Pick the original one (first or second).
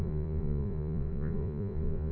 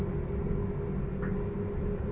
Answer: second